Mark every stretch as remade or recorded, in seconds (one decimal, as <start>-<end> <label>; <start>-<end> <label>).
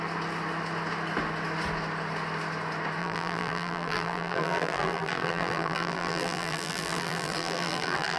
0.0-3.0 recorded; 3.0-8.2 remade